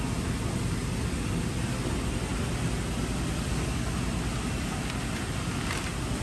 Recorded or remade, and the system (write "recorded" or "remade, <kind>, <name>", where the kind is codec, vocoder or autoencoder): recorded